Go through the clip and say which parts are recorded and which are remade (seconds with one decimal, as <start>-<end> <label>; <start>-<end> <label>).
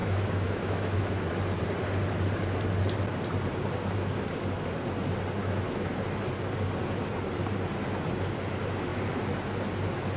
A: 0.0-1.1 remade; 1.1-5.4 recorded; 5.4-6.0 remade; 6.0-10.2 recorded